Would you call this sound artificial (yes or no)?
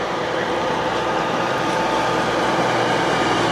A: yes